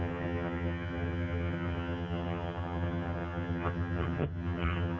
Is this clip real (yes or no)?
no